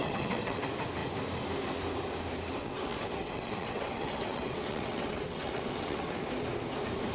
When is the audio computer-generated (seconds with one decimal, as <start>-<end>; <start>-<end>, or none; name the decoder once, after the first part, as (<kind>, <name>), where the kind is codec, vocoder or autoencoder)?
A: 0.0-0.6 (vocoder, WaveNeXt); 2.6-6.2

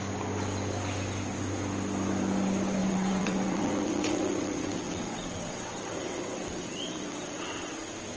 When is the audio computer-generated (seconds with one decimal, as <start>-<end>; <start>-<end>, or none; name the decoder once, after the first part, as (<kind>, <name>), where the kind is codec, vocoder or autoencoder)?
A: 2.8-7.7 (vocoder, WaveNeXt)

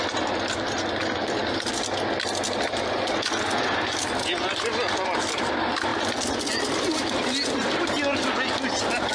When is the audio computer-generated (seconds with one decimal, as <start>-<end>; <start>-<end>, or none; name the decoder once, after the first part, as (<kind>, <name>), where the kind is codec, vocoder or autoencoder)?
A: none

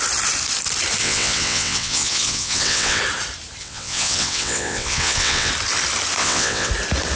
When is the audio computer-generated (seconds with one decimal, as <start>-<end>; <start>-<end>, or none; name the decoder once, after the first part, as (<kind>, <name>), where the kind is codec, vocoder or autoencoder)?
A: 1.0-3.0 (vocoder, WaveNeXt); 3.6-5.5; 6.2-6.7

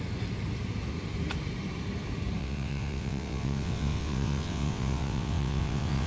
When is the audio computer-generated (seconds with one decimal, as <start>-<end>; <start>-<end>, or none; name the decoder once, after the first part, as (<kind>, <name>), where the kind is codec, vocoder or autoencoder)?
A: 2.4-6.1 (vocoder, WaveNeXt)